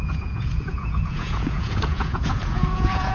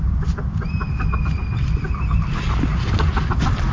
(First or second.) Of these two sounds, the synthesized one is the first